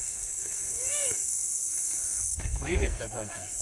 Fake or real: fake